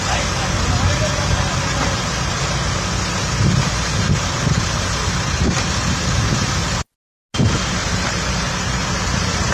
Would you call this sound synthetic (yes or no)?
no